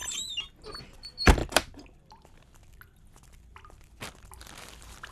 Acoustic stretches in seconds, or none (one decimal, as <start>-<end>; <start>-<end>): 0.0-5.1